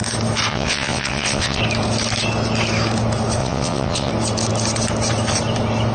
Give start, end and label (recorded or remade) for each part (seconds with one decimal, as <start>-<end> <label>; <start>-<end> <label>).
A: 0.0-0.5 recorded; 0.5-1.6 remade; 1.6-3.4 recorded; 3.4-4.1 remade; 4.1-5.9 recorded